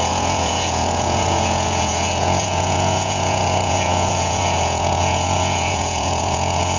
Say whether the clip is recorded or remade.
remade